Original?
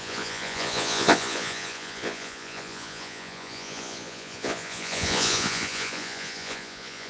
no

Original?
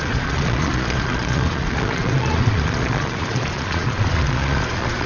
no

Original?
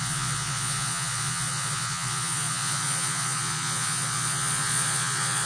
no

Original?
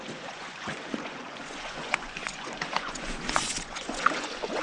no